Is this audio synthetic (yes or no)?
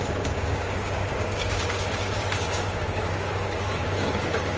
yes